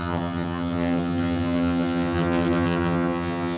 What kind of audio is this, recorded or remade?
remade